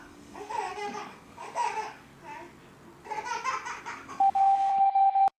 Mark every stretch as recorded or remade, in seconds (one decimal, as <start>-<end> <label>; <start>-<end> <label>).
0.0-2.1 remade; 2.1-3.8 recorded; 3.8-5.4 remade

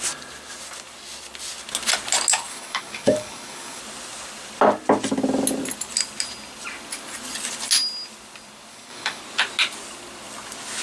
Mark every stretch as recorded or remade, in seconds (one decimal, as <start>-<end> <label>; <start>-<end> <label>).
0.0-2.5 recorded; 2.5-3.8 remade; 3.8-8.7 recorded; 8.7-9.2 remade; 9.2-10.8 recorded

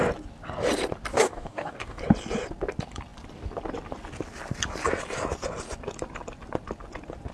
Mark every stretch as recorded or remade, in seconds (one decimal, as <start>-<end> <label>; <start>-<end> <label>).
0.0-1.1 recorded; 1.1-2.0 remade; 2.0-7.3 recorded

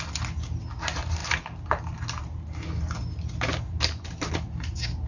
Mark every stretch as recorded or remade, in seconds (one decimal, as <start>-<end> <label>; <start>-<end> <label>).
0.0-5.1 recorded

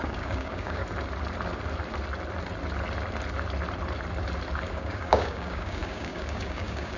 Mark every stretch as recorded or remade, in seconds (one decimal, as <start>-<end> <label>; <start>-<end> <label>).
0.0-0.8 remade; 0.8-4.7 recorded; 4.7-7.0 remade